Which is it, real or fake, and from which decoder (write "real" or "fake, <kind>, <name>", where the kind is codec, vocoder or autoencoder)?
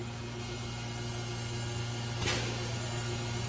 real